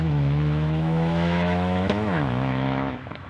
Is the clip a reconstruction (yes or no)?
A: yes